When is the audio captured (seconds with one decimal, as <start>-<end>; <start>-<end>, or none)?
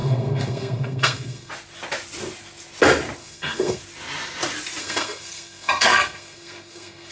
1.5-3.2; 3.8-4.8